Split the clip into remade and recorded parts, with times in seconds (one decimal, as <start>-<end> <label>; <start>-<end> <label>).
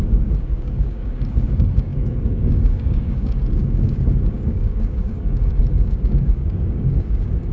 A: 0.0-7.5 remade